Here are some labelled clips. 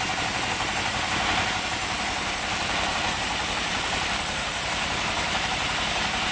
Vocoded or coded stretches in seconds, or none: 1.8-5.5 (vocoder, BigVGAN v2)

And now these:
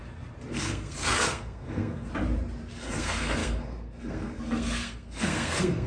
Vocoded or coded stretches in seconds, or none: 0.5-2.1 (codec, SNAC); 2.7-5.9